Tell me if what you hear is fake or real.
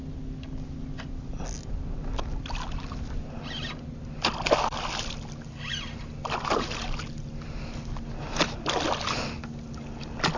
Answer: real